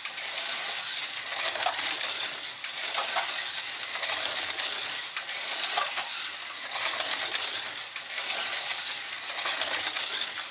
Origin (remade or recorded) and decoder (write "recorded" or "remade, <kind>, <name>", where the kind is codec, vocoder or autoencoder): recorded